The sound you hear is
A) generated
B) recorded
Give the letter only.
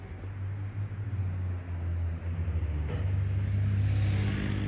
B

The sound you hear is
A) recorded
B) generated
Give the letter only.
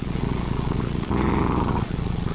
B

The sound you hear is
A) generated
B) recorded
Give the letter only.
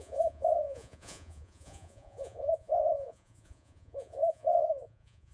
A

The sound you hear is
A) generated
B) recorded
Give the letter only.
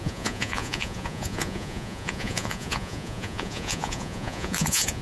A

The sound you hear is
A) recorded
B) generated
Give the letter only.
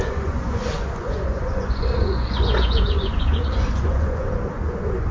B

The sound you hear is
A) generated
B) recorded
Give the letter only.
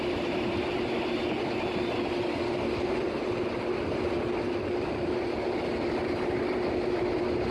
B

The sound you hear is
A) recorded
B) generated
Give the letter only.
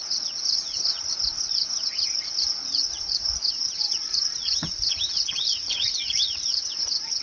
B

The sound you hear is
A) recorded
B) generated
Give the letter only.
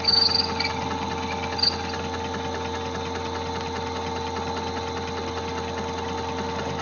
A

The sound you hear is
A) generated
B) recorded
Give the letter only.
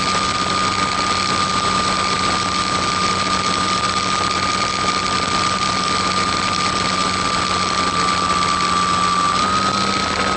B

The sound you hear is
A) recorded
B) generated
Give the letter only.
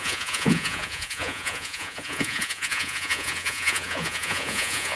B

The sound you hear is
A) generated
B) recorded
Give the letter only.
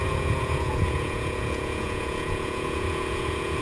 A